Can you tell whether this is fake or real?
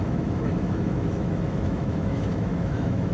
fake